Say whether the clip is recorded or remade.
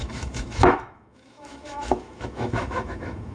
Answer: remade